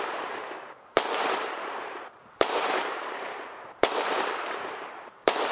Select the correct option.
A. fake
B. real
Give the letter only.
A